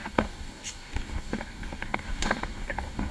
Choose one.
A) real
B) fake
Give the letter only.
B